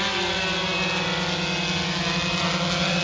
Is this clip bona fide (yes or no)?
yes